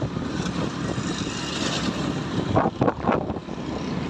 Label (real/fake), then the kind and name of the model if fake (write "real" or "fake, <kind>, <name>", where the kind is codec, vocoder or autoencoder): real